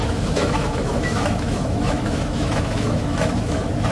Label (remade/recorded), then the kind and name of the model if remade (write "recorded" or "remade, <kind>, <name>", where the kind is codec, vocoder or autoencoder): remade, autoencoder, DAC-VAE